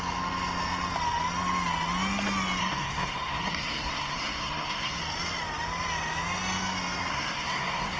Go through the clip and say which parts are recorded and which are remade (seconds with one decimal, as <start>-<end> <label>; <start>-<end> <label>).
0.0-2.6 recorded; 2.6-5.0 remade; 5.0-7.1 recorded; 7.1-8.0 remade